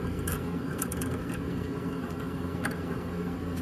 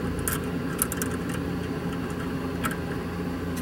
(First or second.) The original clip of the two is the second